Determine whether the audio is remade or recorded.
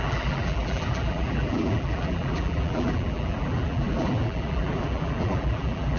remade